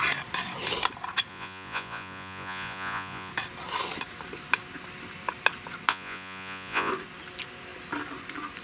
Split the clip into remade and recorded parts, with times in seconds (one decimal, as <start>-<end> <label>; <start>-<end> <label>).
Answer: 0.0-1.3 recorded; 1.3-3.3 remade; 3.3-5.9 recorded; 5.9-6.9 remade; 6.9-8.6 recorded